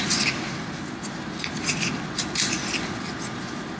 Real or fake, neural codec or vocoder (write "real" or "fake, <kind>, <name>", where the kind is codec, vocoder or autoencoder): real